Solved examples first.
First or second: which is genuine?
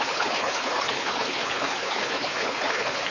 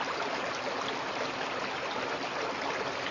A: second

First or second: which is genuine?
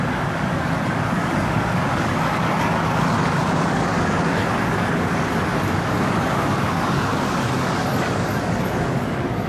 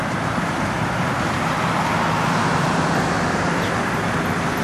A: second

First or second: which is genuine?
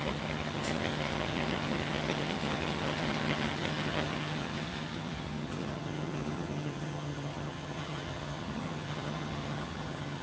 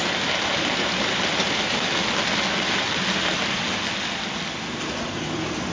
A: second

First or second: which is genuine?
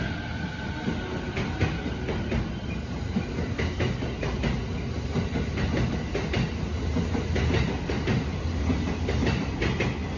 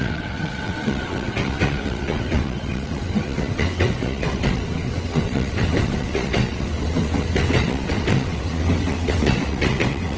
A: first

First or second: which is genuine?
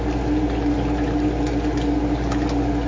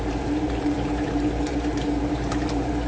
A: first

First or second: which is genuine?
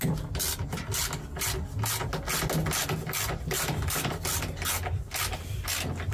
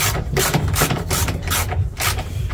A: first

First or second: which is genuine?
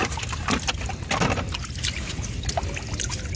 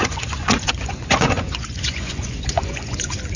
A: first